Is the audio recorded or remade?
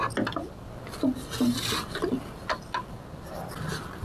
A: recorded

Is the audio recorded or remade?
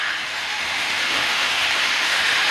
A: remade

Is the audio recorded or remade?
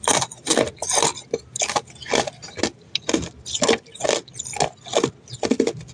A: recorded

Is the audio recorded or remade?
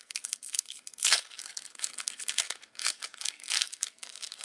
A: remade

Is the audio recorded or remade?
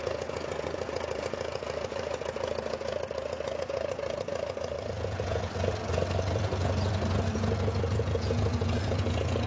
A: remade